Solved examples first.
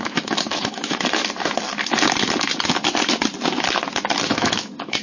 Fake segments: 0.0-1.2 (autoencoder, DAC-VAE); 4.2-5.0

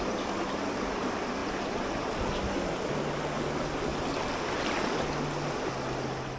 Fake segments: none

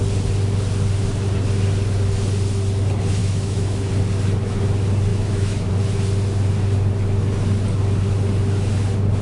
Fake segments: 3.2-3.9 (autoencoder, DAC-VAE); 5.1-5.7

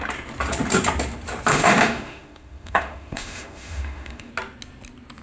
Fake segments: 1.5-4.3 (autoencoder, DAC-VAE)

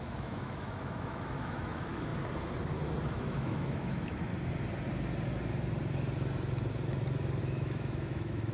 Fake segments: 0.0-2.1 (autoencoder, DAC-VAE); 3.1-4.3; 7.4-8.5

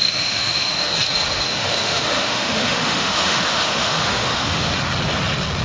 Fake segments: 0.0-0.9 (autoencoder, DAC-VAE); 1.5-4.7